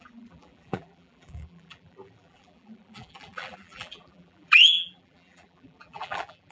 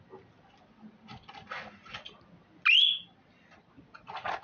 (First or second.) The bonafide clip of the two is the second